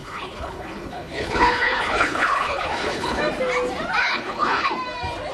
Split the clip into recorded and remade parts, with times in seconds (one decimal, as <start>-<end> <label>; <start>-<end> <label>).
0.0-3.2 remade; 3.2-4.0 recorded; 4.0-4.7 remade; 4.7-5.3 recorded